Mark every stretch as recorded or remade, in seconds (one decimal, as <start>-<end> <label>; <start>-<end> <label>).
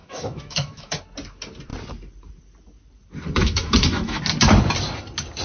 0.0-1.0 remade; 1.0-3.4 recorded; 3.4-4.2 remade; 4.2-5.4 recorded